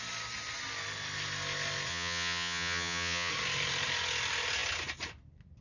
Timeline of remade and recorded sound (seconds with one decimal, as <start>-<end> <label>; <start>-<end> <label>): 0.0-1.9 recorded; 1.9-3.3 remade; 3.3-5.6 recorded